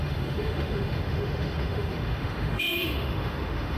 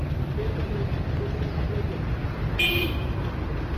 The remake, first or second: first